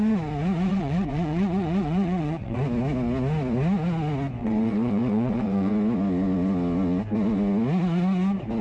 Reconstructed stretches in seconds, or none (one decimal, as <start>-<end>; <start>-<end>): 0.7-2.6; 4.4-5.7